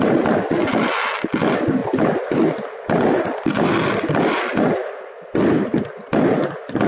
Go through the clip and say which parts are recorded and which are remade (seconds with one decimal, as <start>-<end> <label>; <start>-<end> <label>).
0.0-6.9 recorded